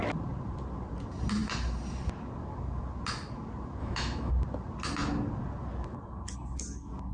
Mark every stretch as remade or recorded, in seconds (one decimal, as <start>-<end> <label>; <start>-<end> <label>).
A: 0.0-3.8 recorded; 3.8-4.3 remade; 4.3-7.1 recorded